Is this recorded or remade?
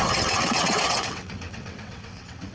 remade